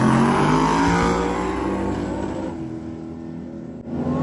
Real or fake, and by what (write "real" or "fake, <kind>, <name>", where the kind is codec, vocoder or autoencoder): real